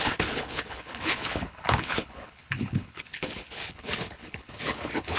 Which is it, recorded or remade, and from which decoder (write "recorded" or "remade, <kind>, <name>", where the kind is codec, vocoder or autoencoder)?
remade, codec, HILCodec